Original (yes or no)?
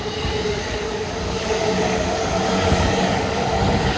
no